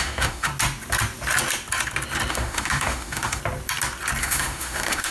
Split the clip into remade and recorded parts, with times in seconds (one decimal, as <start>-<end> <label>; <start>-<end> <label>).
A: 0.0-0.5 remade; 0.5-2.3 recorded; 2.3-3.4 remade; 3.4-4.2 recorded; 4.2-5.1 remade